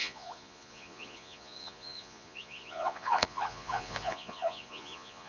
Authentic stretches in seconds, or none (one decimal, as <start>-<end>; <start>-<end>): none